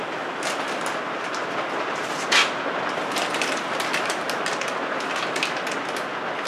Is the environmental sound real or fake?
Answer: real